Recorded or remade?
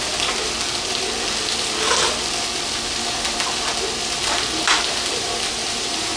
recorded